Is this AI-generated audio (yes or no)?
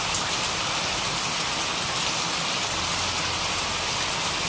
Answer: no